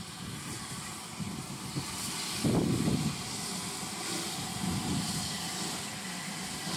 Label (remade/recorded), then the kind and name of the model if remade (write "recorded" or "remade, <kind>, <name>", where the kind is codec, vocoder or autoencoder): recorded